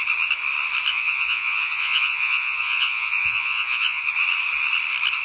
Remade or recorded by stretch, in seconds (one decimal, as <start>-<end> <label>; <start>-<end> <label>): 0.0-0.9 recorded; 0.9-4.0 remade; 4.0-5.2 recorded